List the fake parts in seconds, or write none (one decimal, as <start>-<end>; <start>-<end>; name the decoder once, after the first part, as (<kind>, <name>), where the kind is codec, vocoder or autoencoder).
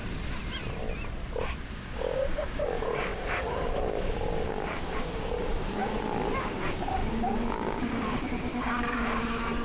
1.8-5.9 (codec, DAC); 6.4-9.6